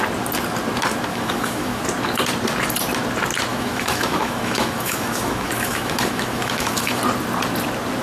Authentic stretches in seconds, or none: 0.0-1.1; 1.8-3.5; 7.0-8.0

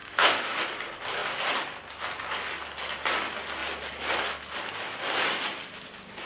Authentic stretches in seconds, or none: 0.6-6.3

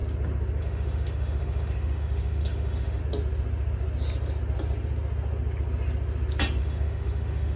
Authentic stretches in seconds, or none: 0.0-0.6; 3.0-6.6

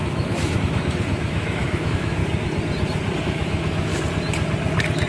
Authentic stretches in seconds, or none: 2.2-3.2; 3.9-5.1